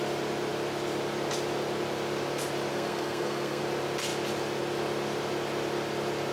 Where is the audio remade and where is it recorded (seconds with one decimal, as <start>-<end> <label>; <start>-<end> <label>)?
0.0-2.7 recorded; 2.7-3.6 remade; 3.6-6.3 recorded